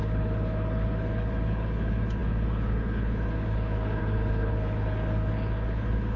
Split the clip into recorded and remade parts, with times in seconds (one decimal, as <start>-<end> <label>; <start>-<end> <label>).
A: 0.0-6.2 remade